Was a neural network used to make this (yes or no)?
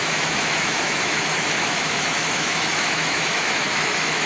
yes